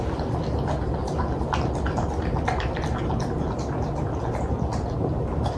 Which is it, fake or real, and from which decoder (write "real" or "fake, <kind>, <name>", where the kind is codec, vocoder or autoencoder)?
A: real